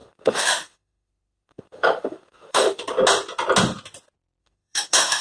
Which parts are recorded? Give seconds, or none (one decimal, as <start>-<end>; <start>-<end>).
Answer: 2.8-4.4